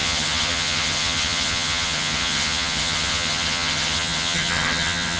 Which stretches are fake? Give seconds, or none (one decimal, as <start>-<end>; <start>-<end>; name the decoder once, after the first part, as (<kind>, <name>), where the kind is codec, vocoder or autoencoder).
0.0-5.2 (vocoder, HiFi-GAN)